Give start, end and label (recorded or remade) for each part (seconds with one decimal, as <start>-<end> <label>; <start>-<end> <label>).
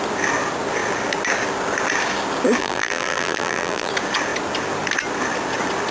0.0-2.6 recorded; 2.6-3.9 remade; 3.9-5.9 recorded